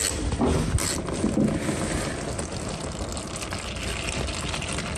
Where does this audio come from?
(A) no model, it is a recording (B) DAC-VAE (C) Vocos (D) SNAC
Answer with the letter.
A